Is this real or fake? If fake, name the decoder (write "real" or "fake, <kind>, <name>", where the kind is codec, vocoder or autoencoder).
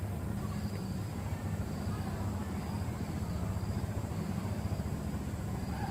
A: real